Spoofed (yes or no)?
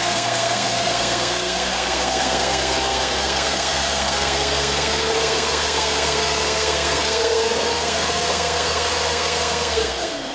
yes